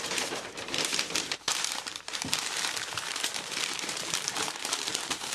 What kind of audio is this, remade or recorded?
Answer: remade